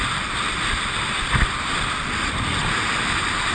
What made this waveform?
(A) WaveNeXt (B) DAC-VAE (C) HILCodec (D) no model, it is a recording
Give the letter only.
D